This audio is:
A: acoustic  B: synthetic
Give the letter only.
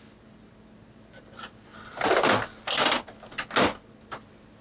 A